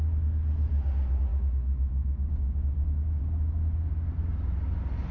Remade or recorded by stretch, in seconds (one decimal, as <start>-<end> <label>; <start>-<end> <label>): 0.0-1.3 recorded; 1.3-3.2 remade; 3.2-5.1 recorded